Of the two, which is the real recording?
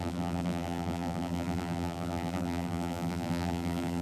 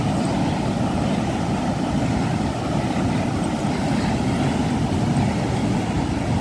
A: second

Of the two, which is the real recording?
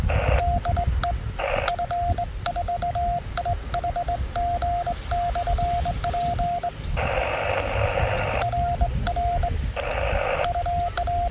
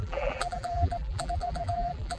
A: first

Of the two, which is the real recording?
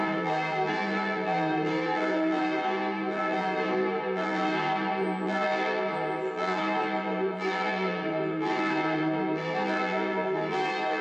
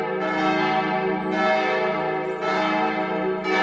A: second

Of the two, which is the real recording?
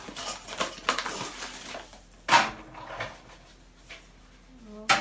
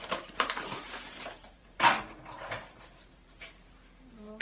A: first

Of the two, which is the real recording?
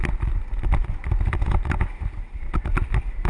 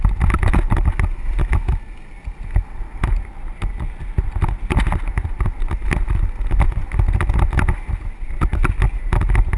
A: second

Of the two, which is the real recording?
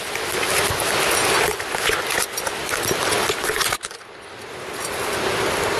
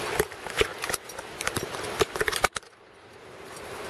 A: first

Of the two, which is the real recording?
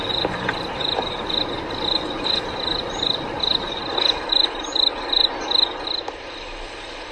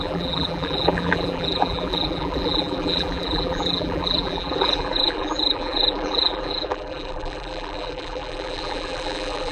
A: first